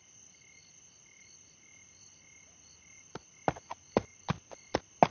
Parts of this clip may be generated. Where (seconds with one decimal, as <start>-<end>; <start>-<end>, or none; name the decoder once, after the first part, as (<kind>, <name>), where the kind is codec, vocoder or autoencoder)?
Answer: none